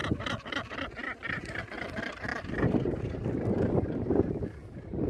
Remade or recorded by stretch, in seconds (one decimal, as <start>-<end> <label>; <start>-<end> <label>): 0.0-1.6 remade; 1.6-2.3 recorded; 2.3-4.1 remade; 4.1-5.1 recorded